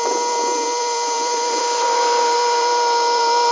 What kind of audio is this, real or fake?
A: fake